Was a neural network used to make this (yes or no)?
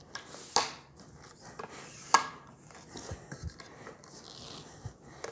no